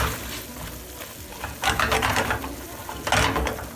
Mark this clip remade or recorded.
recorded